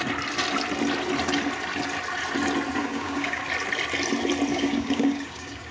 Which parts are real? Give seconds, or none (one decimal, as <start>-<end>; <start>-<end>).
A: 0.0-2.8; 3.4-4.5